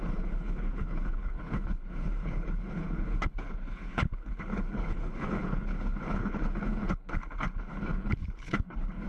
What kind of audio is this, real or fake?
fake